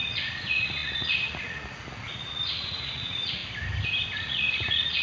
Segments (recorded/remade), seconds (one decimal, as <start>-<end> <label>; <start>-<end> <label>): 0.0-3.4 remade; 3.4-4.2 recorded; 4.2-5.0 remade